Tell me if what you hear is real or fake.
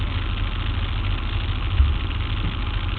real